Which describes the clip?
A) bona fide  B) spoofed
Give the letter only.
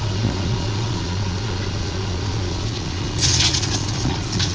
B